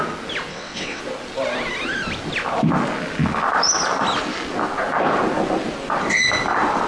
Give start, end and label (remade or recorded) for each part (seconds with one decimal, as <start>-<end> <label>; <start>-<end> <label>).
0.0-0.5 recorded; 0.5-1.0 remade; 1.0-6.9 recorded